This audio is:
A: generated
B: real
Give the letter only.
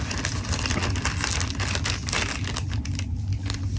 B